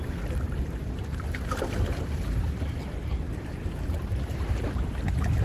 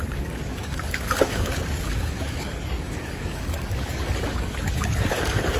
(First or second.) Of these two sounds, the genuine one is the first